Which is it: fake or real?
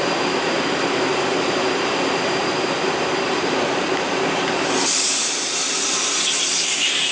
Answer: fake